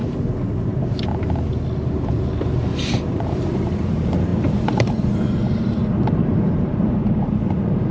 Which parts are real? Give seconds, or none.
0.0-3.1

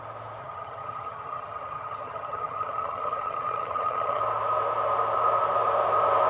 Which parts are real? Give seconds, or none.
0.0-0.4; 4.2-6.3